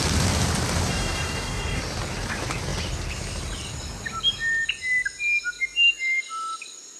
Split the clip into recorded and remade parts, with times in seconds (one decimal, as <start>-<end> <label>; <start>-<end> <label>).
0.0-0.9 recorded; 0.9-1.8 remade; 1.8-7.0 recorded